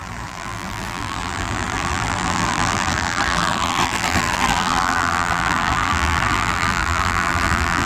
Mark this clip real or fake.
fake